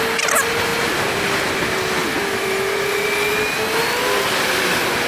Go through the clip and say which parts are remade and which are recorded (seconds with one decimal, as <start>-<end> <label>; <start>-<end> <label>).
0.0-5.1 recorded